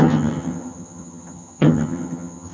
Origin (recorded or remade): remade